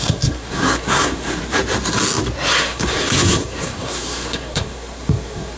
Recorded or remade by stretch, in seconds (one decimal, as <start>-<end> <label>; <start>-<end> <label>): 0.0-1.4 remade; 1.4-2.6 recorded; 2.6-5.6 remade